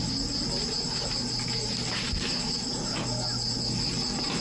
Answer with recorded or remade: recorded